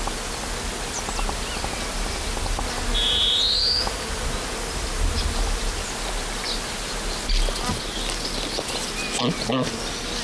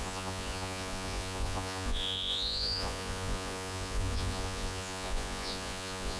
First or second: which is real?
first